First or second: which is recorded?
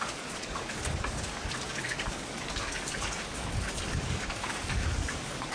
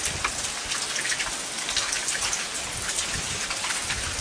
second